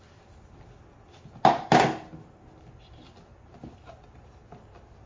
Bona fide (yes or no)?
yes